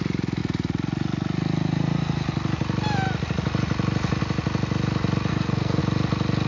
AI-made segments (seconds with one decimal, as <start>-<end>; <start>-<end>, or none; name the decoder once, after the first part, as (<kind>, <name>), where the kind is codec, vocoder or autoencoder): 5.3-5.8 (codec, SNAC)